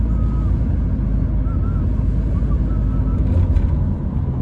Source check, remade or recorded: recorded